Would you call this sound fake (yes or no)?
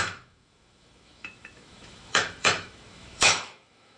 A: yes